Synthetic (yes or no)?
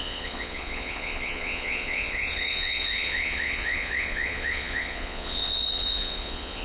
yes